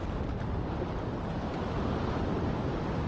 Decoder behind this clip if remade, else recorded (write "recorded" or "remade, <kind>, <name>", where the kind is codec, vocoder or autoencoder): recorded